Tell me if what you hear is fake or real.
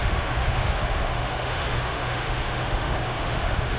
fake